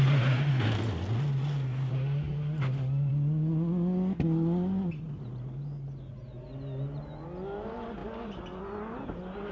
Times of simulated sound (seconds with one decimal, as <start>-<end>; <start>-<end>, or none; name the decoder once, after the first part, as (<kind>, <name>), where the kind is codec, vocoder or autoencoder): none